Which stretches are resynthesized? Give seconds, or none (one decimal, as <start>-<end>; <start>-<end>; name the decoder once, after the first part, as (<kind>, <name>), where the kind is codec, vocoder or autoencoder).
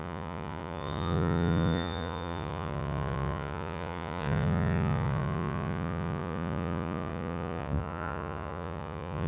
0.0-9.3 (vocoder, Vocos)